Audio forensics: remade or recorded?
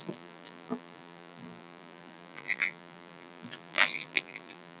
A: remade